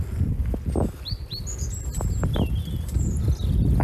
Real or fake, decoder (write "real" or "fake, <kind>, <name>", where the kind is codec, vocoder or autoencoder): real